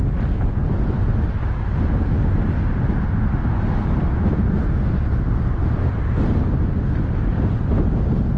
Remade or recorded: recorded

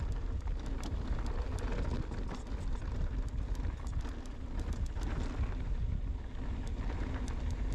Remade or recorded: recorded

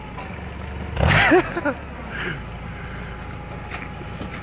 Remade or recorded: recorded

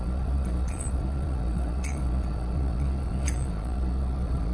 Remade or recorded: remade